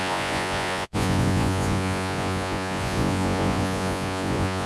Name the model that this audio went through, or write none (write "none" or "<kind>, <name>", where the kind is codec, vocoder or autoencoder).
vocoder, Vocos